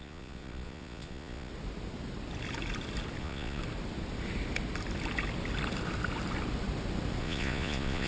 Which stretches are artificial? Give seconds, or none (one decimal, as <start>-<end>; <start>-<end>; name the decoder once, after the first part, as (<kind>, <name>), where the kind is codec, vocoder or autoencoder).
0.0-1.5 (vocoder, Vocos); 3.2-3.6; 7.2-8.1